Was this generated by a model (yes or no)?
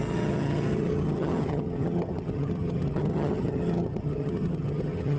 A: yes